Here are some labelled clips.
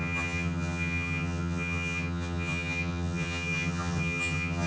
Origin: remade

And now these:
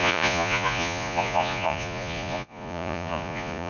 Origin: remade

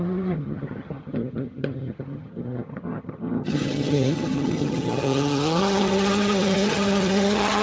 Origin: remade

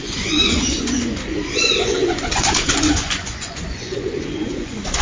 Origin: remade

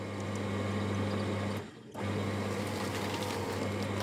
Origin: recorded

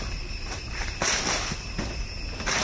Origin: recorded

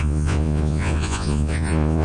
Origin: remade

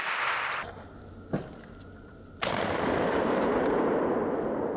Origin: recorded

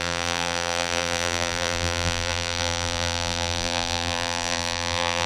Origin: remade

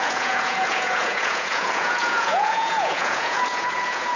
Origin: remade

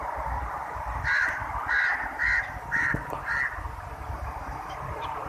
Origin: recorded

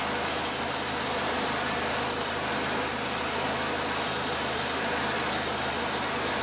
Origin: recorded